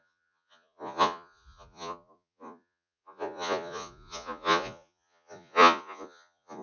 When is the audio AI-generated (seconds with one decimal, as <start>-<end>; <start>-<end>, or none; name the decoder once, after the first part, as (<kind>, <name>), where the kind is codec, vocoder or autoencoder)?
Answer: 0.0-6.6 (vocoder, Vocos)